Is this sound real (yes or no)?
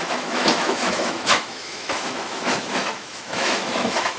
no